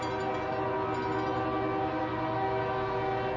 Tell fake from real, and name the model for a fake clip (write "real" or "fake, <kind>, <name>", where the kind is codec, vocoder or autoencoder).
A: real